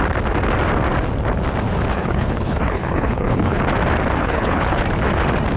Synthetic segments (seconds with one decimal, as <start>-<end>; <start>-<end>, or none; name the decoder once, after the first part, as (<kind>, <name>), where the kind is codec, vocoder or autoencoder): 1.9-3.6 (codec, HILCodec); 4.2-4.8